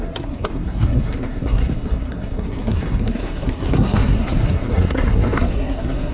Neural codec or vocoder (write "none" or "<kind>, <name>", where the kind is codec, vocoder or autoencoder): codec, SNAC